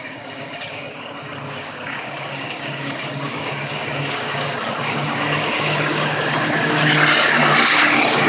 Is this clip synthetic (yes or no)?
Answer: yes